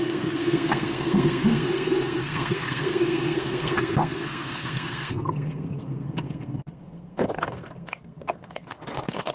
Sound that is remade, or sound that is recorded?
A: remade